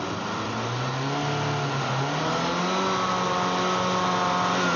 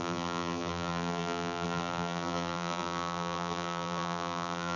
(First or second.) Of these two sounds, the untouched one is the first